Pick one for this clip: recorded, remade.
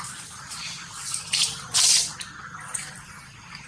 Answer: recorded